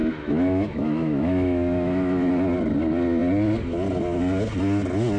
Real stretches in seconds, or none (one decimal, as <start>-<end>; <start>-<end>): 2.3-5.2